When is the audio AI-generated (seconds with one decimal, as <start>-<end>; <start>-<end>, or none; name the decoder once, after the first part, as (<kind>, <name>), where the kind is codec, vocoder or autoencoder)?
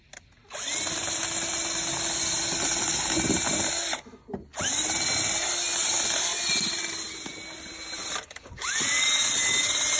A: none